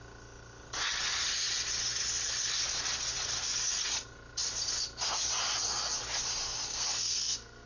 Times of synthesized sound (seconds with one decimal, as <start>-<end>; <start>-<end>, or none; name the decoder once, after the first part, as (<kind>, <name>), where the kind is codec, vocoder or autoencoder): 6.7-7.7 (codec, SNAC)